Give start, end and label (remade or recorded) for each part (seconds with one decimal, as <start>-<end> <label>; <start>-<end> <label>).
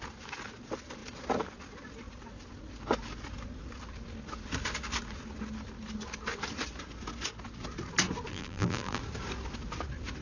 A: 0.0-8.3 recorded; 8.3-9.0 remade; 9.0-10.2 recorded